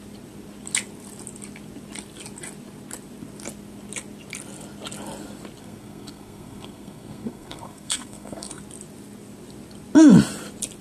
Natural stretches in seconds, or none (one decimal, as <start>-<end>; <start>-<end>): 0.0-5.6; 8.6-10.8